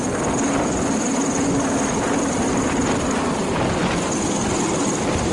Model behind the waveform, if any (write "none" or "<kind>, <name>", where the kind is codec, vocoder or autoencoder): none